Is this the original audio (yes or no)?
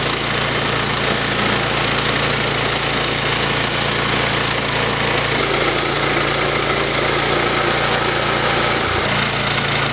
yes